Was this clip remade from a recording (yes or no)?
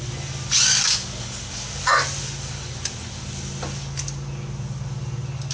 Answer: no